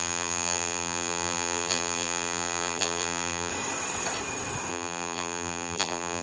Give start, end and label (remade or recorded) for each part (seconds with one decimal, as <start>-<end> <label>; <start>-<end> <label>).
0.0-3.5 remade; 3.5-4.7 recorded; 4.7-6.2 remade